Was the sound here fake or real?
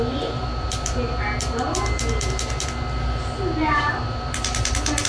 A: real